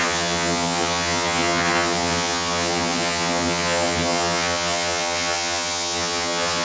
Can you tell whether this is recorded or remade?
remade